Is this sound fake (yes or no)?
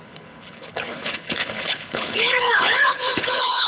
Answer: yes